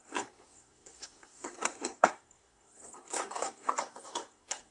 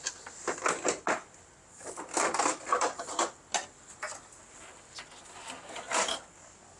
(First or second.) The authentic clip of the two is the second